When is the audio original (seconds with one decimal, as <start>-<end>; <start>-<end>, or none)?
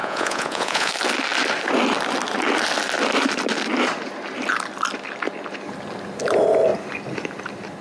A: 0.9-7.8